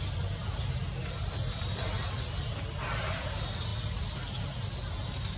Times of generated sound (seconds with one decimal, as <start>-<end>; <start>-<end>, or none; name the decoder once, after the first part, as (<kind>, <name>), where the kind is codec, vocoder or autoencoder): none